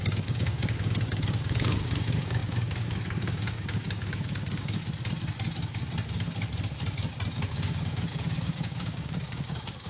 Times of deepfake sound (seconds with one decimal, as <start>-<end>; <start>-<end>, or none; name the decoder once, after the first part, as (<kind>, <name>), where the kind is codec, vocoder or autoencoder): 0.0-4.8 (codec, DAC); 7.5-9.9